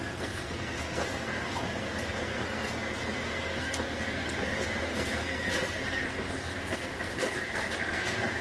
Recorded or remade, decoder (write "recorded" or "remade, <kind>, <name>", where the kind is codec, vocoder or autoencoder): remade, codec, SNAC